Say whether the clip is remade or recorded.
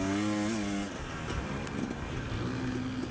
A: recorded